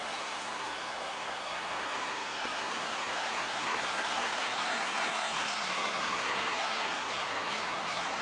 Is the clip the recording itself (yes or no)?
no